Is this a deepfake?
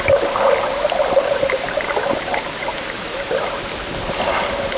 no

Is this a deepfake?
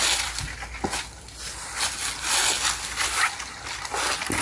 no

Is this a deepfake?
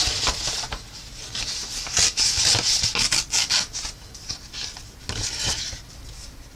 no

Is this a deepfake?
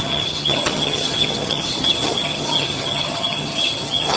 yes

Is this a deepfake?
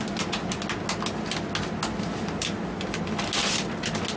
no